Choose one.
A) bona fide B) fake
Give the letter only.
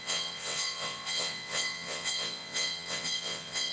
B